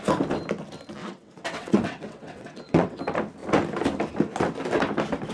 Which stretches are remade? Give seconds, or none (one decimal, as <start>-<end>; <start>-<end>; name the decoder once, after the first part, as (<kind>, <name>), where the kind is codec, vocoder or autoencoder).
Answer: 1.0-3.0 (vocoder, WaveNeXt)